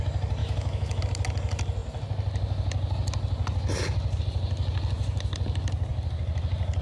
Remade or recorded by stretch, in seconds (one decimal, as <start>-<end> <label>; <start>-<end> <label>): 0.0-0.4 recorded; 0.4-1.0 remade; 1.0-6.8 recorded